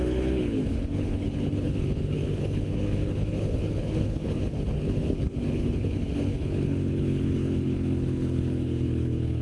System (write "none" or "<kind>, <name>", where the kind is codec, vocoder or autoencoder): codec, HILCodec